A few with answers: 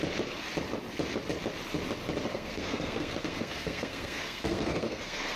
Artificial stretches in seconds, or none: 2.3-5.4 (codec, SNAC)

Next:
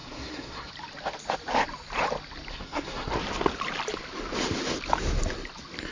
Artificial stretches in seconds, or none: 0.0-0.7 (codec, SNAC); 2.5-3.1

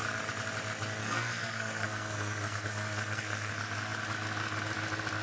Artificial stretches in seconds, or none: 1.0-3.5 (codec, SNAC)

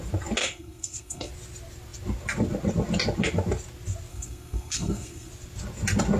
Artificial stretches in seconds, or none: 0.4-1.3 (codec, SNAC); 4.1-5.3

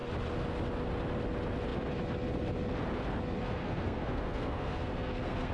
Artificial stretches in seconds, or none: 3.4-5.5 (codec, SNAC)

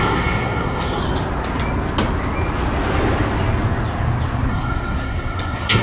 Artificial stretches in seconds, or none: 0.0-1.0 (codec, SNAC); 4.5-5.8

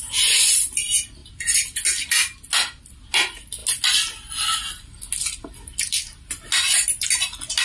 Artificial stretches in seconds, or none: none